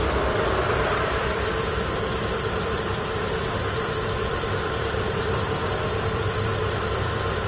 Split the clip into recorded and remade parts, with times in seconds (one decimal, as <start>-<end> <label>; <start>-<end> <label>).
0.0-7.5 remade